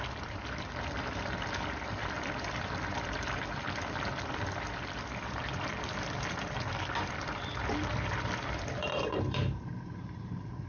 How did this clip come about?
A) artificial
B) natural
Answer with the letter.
A